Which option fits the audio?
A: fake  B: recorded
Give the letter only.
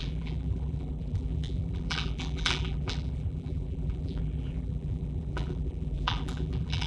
A